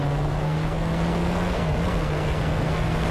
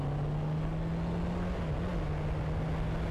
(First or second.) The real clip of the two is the second